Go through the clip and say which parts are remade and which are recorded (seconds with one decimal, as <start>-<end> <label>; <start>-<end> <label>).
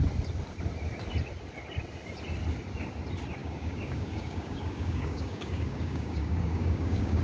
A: 0.0-3.4 recorded; 3.4-7.2 remade